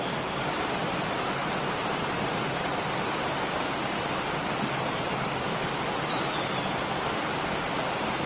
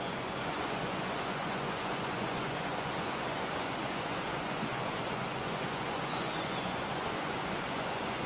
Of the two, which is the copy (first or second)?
second